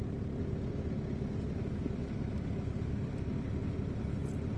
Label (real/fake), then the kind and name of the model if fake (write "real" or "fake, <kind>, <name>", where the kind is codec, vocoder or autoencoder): real